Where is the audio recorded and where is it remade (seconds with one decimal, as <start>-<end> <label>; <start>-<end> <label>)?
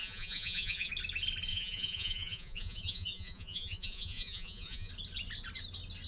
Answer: 0.0-0.9 remade; 0.9-1.5 recorded; 1.5-4.9 remade; 4.9-6.1 recorded